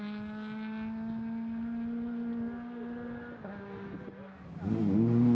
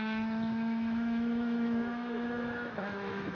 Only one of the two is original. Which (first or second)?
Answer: first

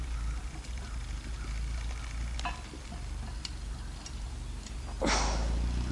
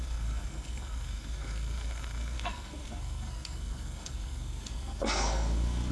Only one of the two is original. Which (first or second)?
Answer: first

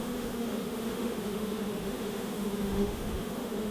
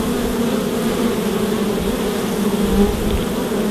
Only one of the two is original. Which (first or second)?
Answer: second